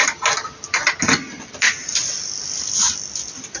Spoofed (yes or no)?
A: no